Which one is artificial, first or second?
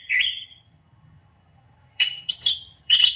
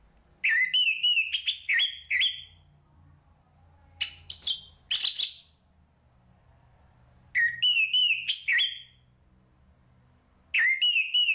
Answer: first